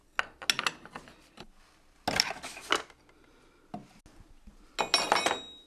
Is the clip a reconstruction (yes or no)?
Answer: no